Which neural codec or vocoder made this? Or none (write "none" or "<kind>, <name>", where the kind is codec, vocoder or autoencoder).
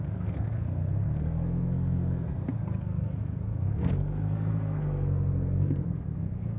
codec, SNAC